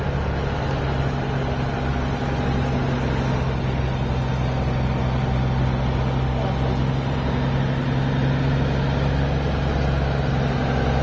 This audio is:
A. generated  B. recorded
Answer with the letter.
B